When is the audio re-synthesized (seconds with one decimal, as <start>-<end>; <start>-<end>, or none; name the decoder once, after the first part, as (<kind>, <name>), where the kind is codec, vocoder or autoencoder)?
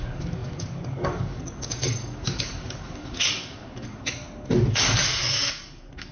0.0-4.2 (codec, DAC); 4.7-6.1